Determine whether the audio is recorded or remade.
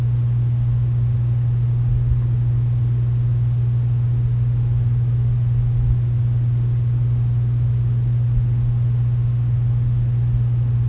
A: recorded